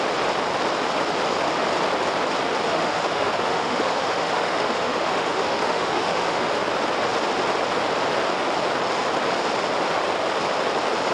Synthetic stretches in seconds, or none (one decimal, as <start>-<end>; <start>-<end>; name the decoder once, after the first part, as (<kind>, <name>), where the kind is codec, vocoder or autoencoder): 2.7-6.6 (autoencoder, DAC-VAE)